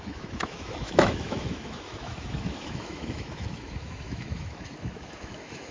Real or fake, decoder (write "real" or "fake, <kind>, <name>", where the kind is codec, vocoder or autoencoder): fake, autoencoder, DAC-VAE